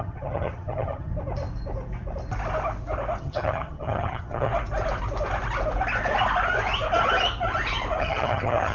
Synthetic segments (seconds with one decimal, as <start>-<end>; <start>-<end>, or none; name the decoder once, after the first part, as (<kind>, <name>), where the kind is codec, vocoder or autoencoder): 0.0-1.1 (vocoder, HiFi-GAN); 3.2-4.5; 8.0-8.7